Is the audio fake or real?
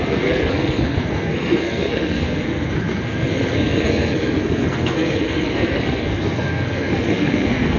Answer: fake